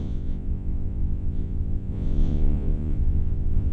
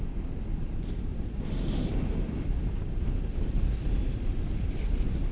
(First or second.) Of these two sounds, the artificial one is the first